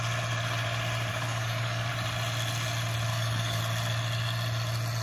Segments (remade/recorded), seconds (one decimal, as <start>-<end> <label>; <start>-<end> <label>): 0.0-1.1 recorded; 1.1-1.9 remade; 1.9-3.1 recorded; 3.1-3.6 remade; 3.6-5.0 recorded